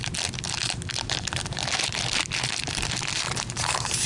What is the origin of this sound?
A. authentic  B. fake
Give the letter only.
B